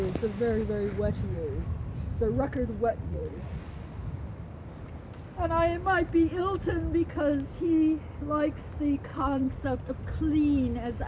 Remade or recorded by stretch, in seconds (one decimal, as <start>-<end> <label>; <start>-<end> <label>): 0.0-2.9 recorded; 2.9-3.6 remade; 3.6-9.1 recorded; 9.1-9.9 remade; 9.9-11.1 recorded